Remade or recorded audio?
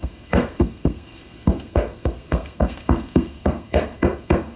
remade